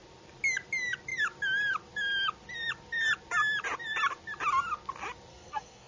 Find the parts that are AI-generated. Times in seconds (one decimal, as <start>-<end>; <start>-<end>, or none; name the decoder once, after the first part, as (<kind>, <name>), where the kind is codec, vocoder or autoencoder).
5.3-5.9 (codec, SNAC)